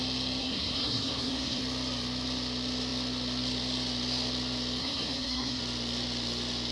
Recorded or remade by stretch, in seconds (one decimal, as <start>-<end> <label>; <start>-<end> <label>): 0.0-0.4 recorded; 0.4-1.6 remade; 1.6-4.8 recorded; 4.8-5.6 remade; 5.6-6.7 recorded